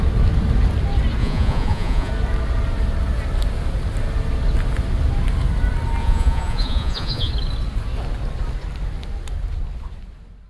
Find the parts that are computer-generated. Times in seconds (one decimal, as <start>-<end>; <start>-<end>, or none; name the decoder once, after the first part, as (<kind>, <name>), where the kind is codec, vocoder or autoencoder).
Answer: 1.2-2.1 (vocoder, Vocos); 6.0-7.3